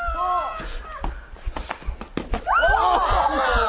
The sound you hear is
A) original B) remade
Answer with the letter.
A